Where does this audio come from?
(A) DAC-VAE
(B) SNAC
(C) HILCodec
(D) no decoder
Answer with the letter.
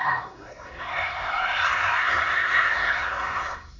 B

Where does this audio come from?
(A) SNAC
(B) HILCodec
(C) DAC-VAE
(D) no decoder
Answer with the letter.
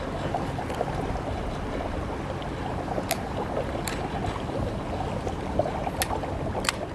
D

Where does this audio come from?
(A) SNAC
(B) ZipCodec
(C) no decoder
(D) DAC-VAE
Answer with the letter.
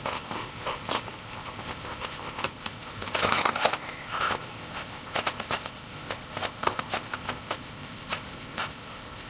B